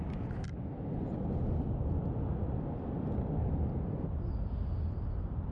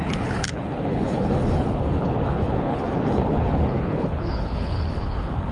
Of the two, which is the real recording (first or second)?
first